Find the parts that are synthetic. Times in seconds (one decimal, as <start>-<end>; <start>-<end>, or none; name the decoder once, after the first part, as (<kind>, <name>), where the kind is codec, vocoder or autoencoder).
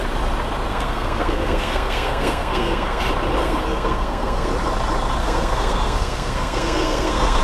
0.7-3.0 (codec, SNAC); 3.4-4.5; 5.2-7.4